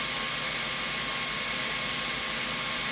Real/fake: real